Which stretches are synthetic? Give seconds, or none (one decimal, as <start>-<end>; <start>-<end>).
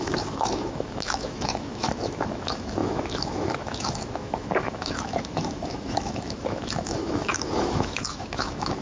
0.0-8.8